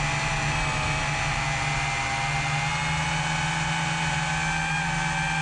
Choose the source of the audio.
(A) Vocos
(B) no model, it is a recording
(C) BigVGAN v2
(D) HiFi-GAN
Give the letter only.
B